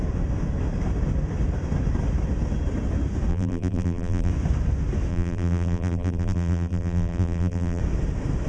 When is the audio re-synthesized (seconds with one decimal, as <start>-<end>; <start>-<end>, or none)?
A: 3.3-4.3; 5.1-7.8